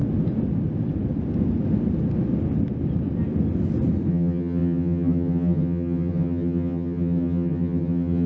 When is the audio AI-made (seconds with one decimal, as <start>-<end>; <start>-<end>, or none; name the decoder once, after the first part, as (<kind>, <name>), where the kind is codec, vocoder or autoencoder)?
4.1-8.3 (vocoder, HiFi-GAN)